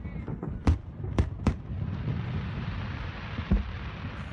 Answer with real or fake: fake